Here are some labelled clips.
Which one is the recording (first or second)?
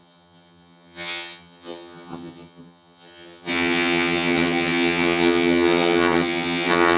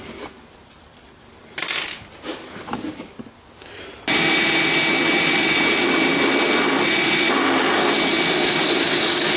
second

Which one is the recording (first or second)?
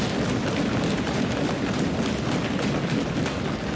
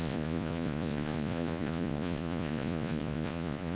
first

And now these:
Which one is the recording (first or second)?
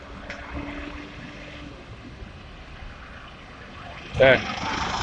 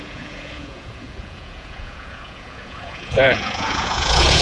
first